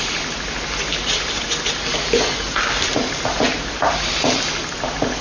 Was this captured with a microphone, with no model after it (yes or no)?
yes